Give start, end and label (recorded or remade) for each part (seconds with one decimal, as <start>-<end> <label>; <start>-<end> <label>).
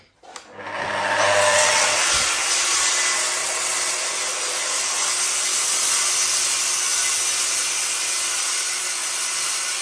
0.0-1.5 recorded; 1.5-2.0 remade; 2.0-3.4 recorded; 3.4-4.0 remade; 4.0-9.8 recorded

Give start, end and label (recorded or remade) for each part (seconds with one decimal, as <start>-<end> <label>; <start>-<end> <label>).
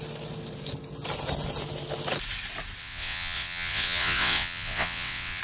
0.0-2.8 recorded; 2.8-5.4 remade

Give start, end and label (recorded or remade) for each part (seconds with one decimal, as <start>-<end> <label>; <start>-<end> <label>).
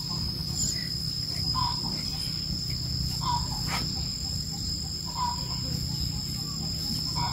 0.0-0.4 recorded; 0.4-2.1 remade; 2.1-4.1 recorded; 4.1-5.4 remade; 5.4-7.3 recorded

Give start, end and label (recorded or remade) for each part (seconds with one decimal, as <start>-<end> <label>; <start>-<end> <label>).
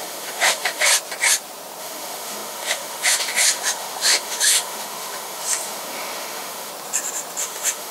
0.0-0.9 remade; 0.9-1.8 recorded; 1.8-6.7 remade; 6.7-7.4 recorded; 7.4-7.9 remade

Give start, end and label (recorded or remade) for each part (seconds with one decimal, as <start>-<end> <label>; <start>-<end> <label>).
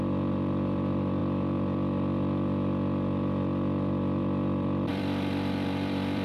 0.0-1.2 remade; 1.2-4.9 recorded; 4.9-6.2 remade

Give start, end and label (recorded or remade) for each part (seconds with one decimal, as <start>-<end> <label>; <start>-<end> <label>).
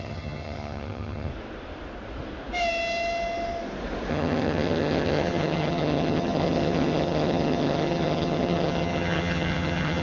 0.0-1.3 remade; 1.3-4.1 recorded; 4.1-10.0 remade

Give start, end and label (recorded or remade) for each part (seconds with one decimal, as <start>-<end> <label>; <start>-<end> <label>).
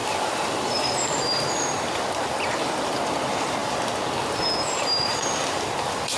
0.0-3.6 remade; 3.6-5.1 recorded; 5.1-6.2 remade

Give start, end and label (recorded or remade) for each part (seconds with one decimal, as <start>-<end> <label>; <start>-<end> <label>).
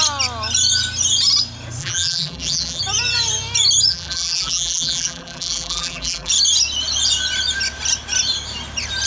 0.0-1.8 recorded; 1.8-2.8 remade; 2.8-3.9 recorded; 3.9-6.3 remade; 6.3-9.1 recorded